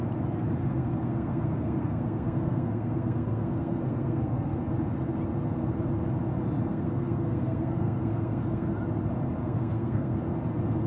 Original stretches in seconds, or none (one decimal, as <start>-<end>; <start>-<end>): 0.0-0.6; 4.6-6.7; 8.7-9.4; 10.2-10.9